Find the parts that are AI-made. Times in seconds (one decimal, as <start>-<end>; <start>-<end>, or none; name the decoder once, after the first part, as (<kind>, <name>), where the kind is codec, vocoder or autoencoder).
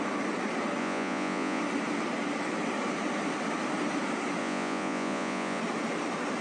0.8-1.6 (vocoder, Vocos); 4.4-5.6